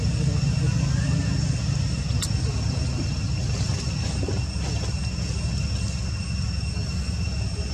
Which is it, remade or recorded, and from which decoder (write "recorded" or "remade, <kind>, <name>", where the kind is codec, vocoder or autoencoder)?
recorded